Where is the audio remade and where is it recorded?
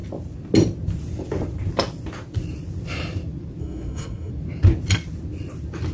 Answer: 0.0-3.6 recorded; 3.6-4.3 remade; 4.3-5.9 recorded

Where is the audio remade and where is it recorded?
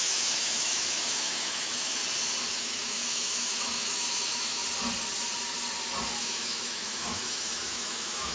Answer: 0.0-2.0 remade; 2.0-2.5 recorded; 2.5-4.6 remade; 4.6-6.2 recorded; 6.2-8.3 remade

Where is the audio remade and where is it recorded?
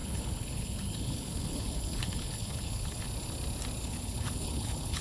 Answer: 0.0-3.0 remade; 3.0-3.8 recorded; 3.8-5.0 remade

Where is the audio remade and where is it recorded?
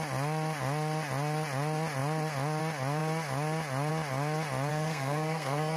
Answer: 0.0-4.7 recorded; 4.7-5.8 remade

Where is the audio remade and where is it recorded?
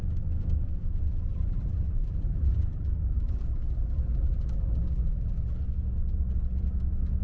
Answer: 0.0-1.3 recorded; 1.3-5.6 remade; 5.6-7.2 recorded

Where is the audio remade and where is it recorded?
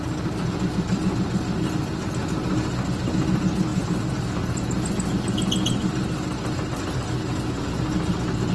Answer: 0.0-3.7 recorded; 3.7-4.5 remade; 4.5-8.5 recorded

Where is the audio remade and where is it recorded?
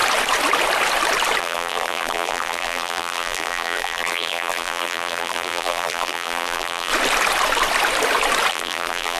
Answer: 0.0-1.4 recorded; 1.4-6.9 remade; 6.9-8.5 recorded; 8.5-9.2 remade